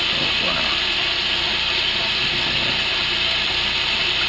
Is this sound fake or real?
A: real